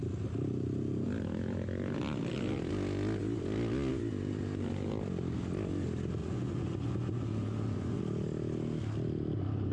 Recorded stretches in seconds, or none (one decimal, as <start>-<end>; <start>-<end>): 0.0-6.2; 8.0-9.7